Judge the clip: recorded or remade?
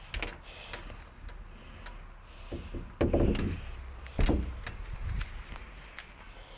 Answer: recorded